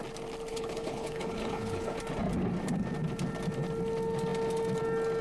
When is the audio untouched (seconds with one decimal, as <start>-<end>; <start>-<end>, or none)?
0.0-0.5; 2.0-5.2